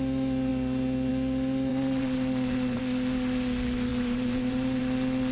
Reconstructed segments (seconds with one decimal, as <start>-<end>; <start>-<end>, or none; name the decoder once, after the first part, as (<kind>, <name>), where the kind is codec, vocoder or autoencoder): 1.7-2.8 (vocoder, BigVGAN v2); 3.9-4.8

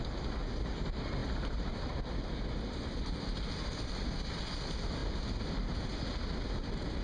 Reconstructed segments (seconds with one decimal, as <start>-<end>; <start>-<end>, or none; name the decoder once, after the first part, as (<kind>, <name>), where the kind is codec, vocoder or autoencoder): 1.2-3.9 (vocoder, BigVGAN v2)

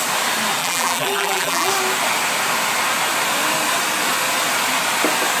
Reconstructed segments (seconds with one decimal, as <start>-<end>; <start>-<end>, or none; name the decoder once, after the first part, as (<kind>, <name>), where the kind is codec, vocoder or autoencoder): 0.6-1.7 (vocoder, BigVGAN v2)

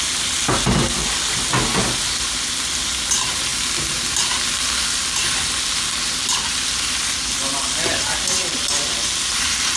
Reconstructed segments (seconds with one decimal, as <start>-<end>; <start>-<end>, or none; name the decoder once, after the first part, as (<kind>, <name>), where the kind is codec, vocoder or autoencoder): none

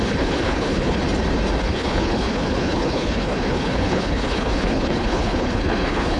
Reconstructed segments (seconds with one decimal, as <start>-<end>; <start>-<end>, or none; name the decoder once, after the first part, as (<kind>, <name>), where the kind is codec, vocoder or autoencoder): 0.0-1.0 (codec, HILCodec); 1.6-6.2